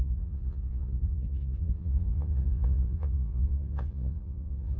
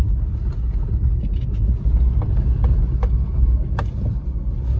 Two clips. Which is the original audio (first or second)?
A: second